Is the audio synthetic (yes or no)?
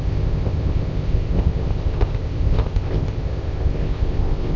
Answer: yes